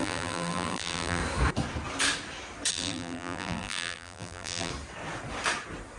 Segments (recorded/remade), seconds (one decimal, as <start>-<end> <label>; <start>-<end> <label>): 0.0-1.2 remade; 1.2-2.7 recorded; 2.7-4.7 remade; 4.7-6.0 recorded

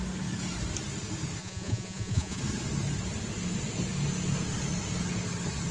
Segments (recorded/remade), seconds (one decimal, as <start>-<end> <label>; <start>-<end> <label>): 0.0-1.4 recorded; 1.4-2.4 remade; 2.4-5.7 recorded

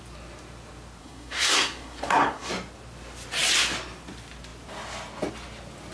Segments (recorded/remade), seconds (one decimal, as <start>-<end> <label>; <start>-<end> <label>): 0.0-1.0 recorded; 1.0-2.5 remade; 2.5-5.9 recorded